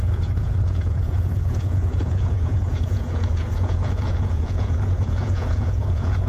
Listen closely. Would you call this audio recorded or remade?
remade